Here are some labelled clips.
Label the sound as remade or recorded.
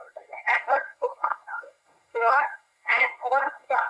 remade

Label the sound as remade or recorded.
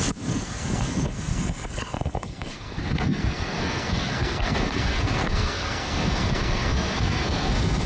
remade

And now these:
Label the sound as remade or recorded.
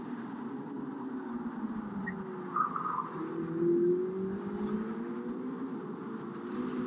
recorded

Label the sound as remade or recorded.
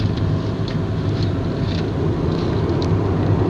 recorded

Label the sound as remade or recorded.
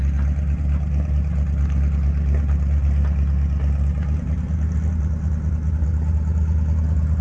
recorded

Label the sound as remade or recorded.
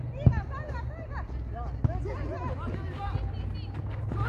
recorded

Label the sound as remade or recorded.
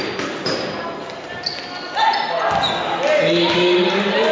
recorded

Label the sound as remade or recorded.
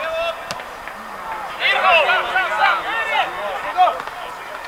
recorded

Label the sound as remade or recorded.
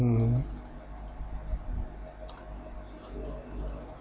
recorded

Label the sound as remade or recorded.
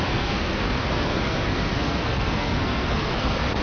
remade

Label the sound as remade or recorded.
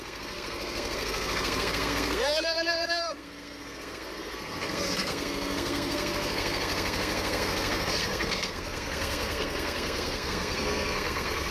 remade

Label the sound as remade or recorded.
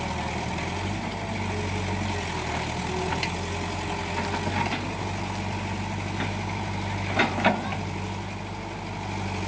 recorded